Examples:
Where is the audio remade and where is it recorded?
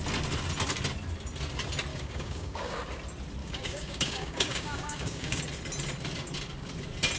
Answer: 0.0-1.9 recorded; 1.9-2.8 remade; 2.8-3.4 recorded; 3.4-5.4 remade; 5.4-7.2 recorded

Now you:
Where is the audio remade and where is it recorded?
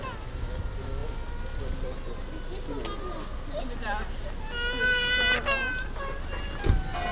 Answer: 0.0-7.1 recorded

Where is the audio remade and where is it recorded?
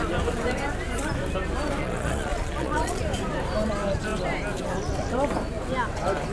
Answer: 0.0-1.8 recorded; 1.8-3.0 remade; 3.0-6.3 recorded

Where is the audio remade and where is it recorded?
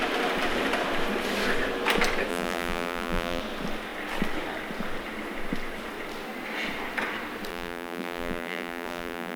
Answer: 0.0-2.3 recorded; 2.3-3.4 remade; 3.4-7.5 recorded; 7.5-9.4 remade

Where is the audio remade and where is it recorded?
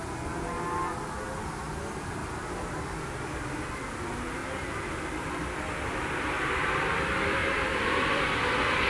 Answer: 0.0-2.2 recorded; 2.2-3.7 remade; 3.7-7.4 recorded; 7.4-8.3 remade; 8.3-8.9 recorded